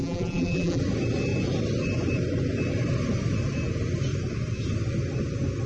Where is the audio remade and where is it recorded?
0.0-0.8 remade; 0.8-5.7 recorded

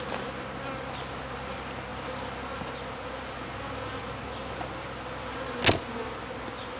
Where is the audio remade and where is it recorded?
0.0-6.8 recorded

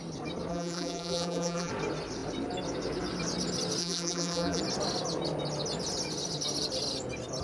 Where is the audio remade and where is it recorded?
0.0-0.5 recorded; 0.5-1.7 remade; 1.7-3.8 recorded; 3.8-4.6 remade; 4.6-7.4 recorded

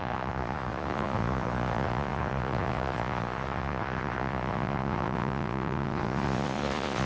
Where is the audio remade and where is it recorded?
0.0-7.1 remade

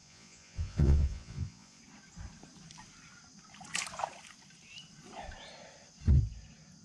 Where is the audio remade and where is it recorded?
0.0-1.8 remade; 1.8-6.8 recorded